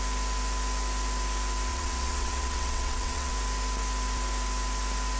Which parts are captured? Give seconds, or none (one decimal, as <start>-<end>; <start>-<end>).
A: 0.0-1.7; 3.3-5.2